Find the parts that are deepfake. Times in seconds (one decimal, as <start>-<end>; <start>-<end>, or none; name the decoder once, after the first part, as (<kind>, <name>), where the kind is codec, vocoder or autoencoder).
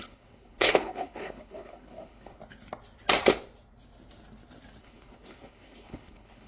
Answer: 0.0-2.4 (codec, HILCodec); 4.8-6.5